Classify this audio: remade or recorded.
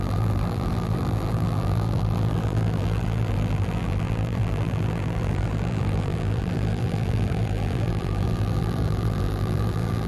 remade